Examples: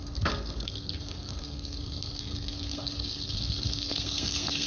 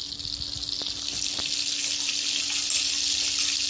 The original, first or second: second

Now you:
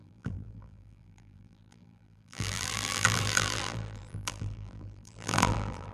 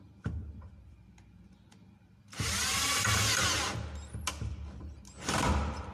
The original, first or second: second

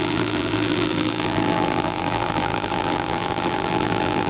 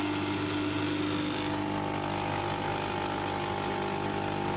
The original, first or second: second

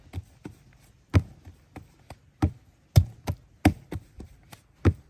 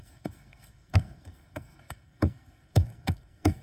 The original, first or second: first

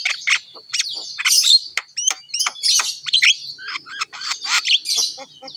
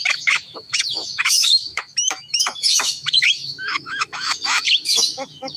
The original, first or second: first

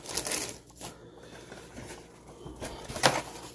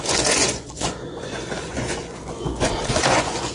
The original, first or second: first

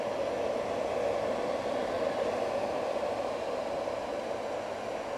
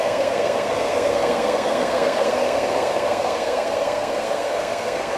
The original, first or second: first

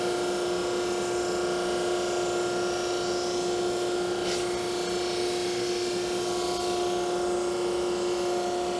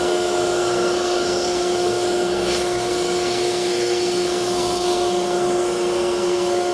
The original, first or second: first